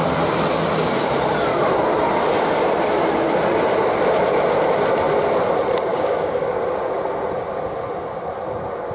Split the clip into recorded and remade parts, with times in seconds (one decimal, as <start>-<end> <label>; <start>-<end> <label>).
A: 0.0-5.9 recorded; 5.9-6.6 remade; 6.6-8.9 recorded